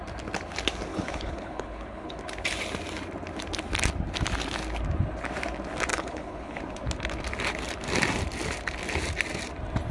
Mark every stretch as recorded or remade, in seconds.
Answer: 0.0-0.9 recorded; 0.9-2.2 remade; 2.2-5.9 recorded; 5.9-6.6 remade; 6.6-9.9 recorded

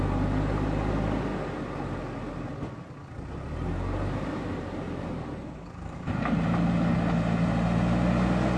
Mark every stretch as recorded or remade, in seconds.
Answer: 0.0-8.6 recorded

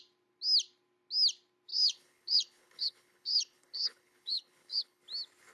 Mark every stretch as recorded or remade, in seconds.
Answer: 0.0-1.7 recorded; 1.7-5.0 remade; 5.0-5.5 recorded

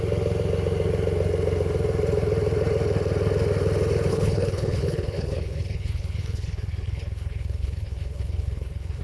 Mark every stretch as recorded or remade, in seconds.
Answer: 0.0-4.1 recorded; 4.1-9.0 remade

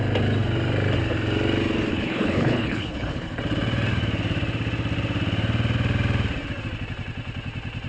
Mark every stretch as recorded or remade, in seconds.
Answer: 0.0-1.9 recorded; 1.9-3.4 remade; 3.4-7.9 recorded

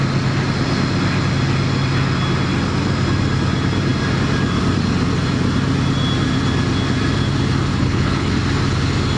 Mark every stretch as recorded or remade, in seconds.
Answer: 0.0-7.7 recorded; 7.7-8.3 remade; 8.3-9.2 recorded

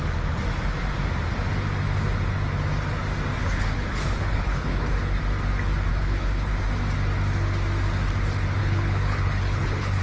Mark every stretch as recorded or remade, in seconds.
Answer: 0.0-3.4 recorded; 3.4-5.2 remade; 5.2-5.9 recorded; 5.9-6.5 remade; 6.5-8.6 recorded; 8.6-10.0 remade